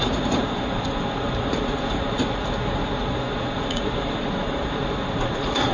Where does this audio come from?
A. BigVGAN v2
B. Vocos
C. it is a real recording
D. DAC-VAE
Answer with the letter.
B